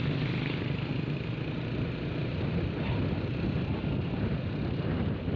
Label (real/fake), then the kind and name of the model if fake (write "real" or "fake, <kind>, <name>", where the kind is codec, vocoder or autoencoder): real